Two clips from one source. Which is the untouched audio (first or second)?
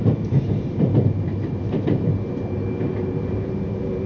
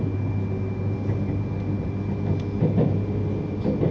second